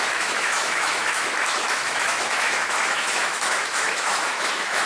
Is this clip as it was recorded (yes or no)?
no